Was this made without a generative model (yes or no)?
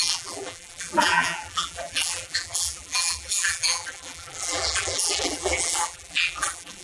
no